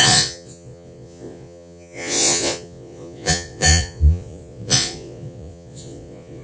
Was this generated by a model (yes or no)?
yes